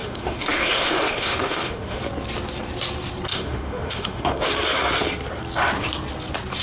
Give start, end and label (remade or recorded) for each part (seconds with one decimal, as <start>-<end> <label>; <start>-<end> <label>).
0.0-2.0 remade; 2.0-3.3 recorded; 3.3-4.5 remade; 4.5-6.6 recorded